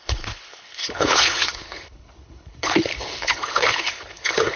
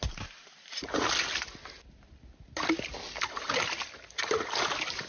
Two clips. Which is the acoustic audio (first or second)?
second